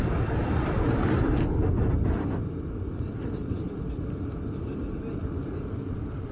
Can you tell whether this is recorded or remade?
recorded